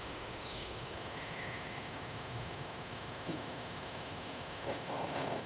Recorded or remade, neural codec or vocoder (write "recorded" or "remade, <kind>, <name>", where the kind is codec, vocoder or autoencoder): remade, autoencoder, DAC-VAE